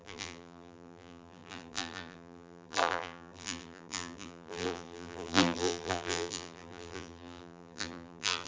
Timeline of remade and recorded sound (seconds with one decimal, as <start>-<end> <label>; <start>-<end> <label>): 0.0-8.5 remade